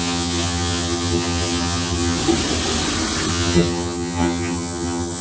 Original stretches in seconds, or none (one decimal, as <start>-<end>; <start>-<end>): 2.2-3.3